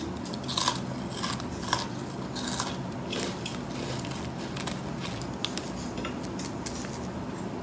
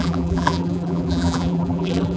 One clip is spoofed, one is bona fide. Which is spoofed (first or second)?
second